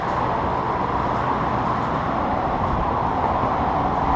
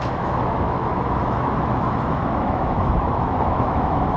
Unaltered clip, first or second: first